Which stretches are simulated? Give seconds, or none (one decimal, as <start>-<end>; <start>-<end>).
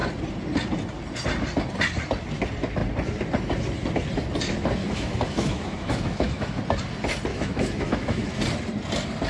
4.8-6.6; 7.3-8.4